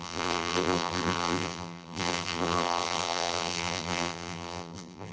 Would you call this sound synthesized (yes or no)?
yes